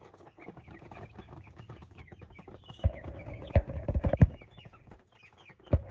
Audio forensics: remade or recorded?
remade